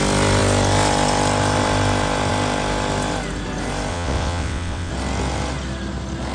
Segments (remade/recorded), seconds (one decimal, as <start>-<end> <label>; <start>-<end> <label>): 0.0-3.9 recorded; 3.9-4.9 remade; 4.9-6.3 recorded